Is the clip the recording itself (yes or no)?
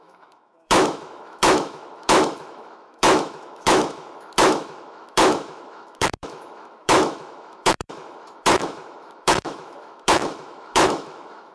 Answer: no